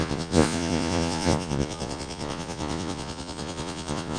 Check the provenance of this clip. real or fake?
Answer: fake